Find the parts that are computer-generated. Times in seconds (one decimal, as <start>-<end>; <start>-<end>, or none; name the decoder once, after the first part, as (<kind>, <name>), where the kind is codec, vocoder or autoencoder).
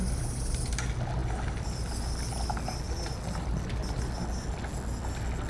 none